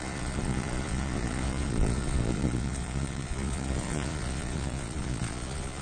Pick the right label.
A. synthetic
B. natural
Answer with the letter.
A